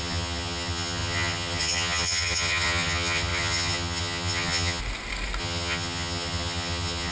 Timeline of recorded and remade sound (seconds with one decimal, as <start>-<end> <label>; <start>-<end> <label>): 0.0-4.8 remade; 4.8-5.4 recorded; 5.4-7.1 remade